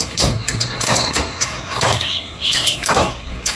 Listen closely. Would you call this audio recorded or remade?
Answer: remade